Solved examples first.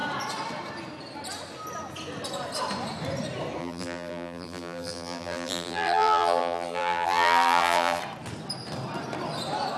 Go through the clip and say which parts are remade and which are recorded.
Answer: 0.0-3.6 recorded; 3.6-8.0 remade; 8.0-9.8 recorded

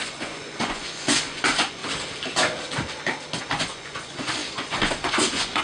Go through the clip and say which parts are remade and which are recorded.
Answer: 0.0-1.8 remade; 1.8-3.4 recorded; 3.4-5.6 remade

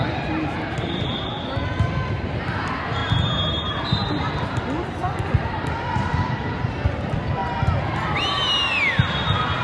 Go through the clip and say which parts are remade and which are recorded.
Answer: 0.0-7.4 remade; 7.4-9.6 recorded

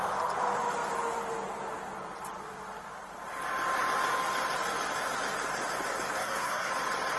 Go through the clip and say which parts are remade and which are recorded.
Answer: 0.0-6.2 recorded; 6.2-6.7 remade; 6.7-7.2 recorded